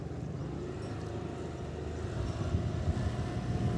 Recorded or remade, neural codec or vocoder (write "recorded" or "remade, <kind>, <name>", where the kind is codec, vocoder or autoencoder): recorded